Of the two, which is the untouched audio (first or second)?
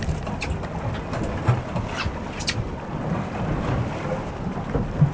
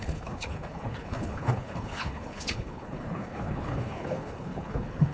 first